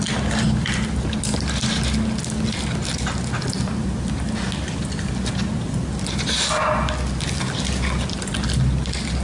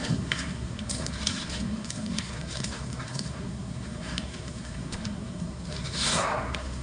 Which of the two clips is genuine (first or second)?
first